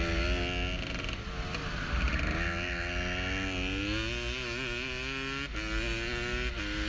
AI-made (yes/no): no